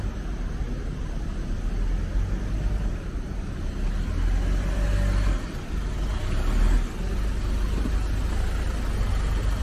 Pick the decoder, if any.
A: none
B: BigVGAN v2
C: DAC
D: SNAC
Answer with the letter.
A